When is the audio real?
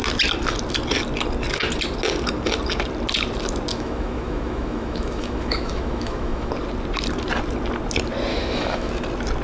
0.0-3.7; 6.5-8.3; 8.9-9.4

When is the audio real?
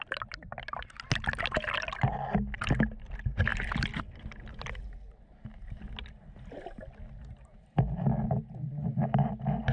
0.0-9.7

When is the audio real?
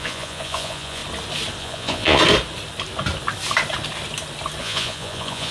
1.0-1.6; 2.2-4.6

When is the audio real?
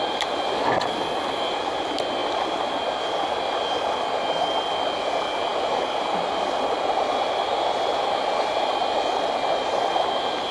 0.0-10.5